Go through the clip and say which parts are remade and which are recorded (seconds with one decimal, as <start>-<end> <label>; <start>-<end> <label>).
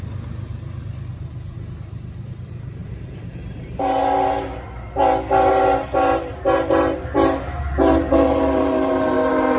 0.0-5.0 remade; 5.0-5.5 recorded; 5.5-9.6 remade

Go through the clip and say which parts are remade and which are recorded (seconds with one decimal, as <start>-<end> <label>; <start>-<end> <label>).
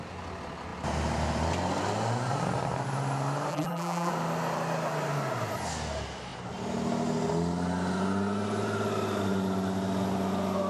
0.0-3.5 recorded; 3.5-4.1 remade; 4.1-10.7 recorded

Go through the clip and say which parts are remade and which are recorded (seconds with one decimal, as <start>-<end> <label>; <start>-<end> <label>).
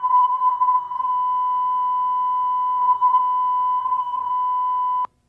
0.0-1.1 remade; 1.1-2.8 recorded; 2.8-3.2 remade; 3.2-3.8 recorded; 3.8-4.3 remade; 4.3-5.3 recorded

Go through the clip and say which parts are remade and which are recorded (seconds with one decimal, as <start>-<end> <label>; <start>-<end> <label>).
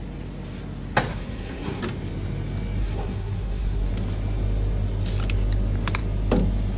0.0-1.1 recorded; 1.1-1.8 remade; 1.8-2.8 recorded; 2.8-3.9 remade; 3.9-6.8 recorded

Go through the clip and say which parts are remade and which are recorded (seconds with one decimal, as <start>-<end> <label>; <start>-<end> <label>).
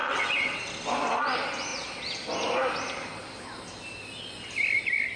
0.0-0.6 remade; 0.6-5.2 recorded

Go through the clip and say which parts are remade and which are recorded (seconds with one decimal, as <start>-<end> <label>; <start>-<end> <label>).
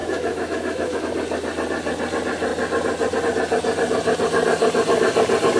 0.0-1.0 remade; 1.0-5.6 recorded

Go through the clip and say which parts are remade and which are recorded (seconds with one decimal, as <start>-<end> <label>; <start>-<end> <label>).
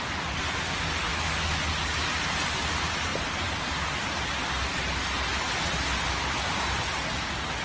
0.0-1.1 recorded; 1.1-1.6 remade; 1.6-7.6 recorded